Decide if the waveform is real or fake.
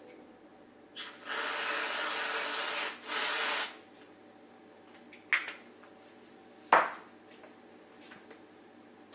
real